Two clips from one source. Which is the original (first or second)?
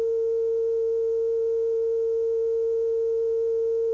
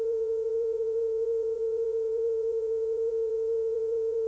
first